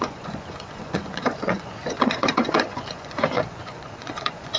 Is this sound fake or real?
fake